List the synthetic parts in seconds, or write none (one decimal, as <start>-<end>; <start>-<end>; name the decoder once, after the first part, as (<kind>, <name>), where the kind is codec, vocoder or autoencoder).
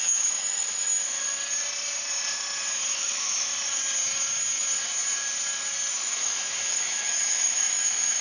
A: 0.0-1.3 (autoencoder, DAC-VAE); 2.9-3.5; 5.9-8.2